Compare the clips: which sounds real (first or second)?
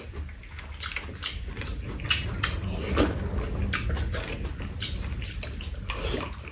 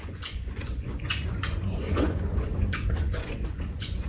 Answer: first